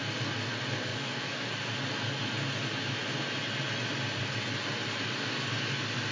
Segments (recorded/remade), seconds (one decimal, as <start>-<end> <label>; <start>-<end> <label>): 0.0-0.9 recorded; 0.9-1.5 remade; 1.5-6.1 recorded